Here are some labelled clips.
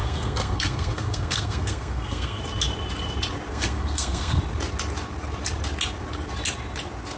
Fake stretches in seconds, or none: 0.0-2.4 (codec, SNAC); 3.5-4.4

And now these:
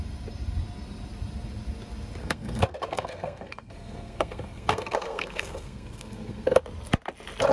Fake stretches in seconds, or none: 2.2-6.6 (codec, SNAC)

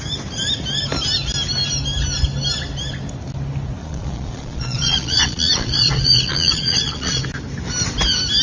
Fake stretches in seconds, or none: 3.8-7.2 (vocoder, Vocos)

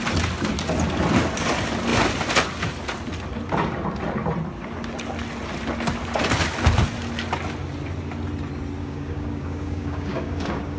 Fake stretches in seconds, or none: 8.8-10.8 (codec, DAC)

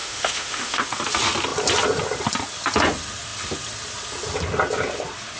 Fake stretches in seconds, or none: 0.0-0.8 (autoencoder, DAC-VAE)

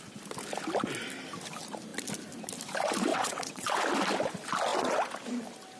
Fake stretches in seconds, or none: 3.1-3.8 (vocoder, WaveNeXt)

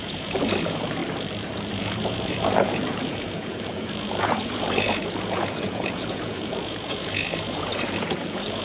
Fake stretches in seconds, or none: 0.0-1.0 (vocoder, Vocos); 1.7-8.6